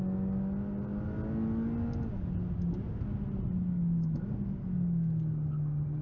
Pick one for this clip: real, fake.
real